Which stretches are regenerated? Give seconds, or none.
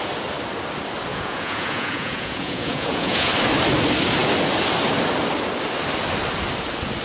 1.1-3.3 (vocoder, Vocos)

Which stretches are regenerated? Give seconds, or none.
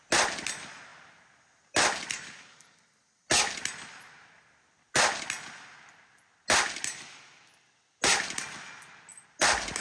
none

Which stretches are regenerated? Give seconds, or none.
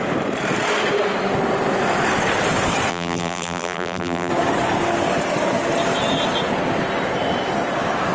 2.9-4.3 (vocoder, BigVGAN v2)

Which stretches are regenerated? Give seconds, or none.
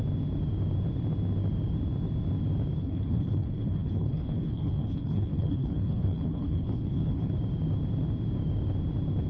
2.8-7.3 (codec, HILCodec)